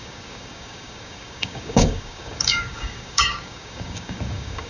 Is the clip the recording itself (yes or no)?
no